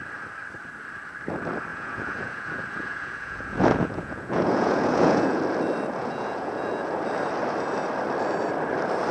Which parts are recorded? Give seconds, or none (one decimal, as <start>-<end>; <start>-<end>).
0.0-1.7; 5.4-6.0; 7.0-9.1